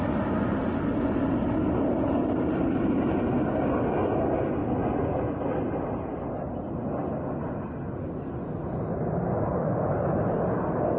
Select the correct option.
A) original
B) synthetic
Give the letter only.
A